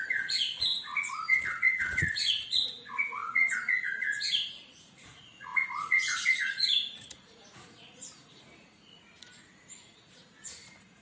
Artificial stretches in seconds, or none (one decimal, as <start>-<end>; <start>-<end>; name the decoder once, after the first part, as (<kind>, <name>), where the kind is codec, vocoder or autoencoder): 0.0-11.0 (vocoder, Vocos)